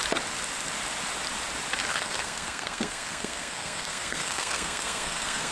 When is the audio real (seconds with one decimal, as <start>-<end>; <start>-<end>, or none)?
0.0-1.9